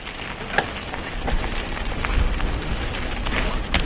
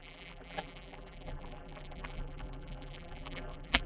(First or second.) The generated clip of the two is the second